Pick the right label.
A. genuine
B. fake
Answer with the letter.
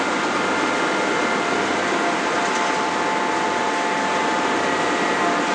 A